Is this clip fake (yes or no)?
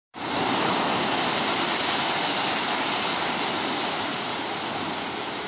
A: no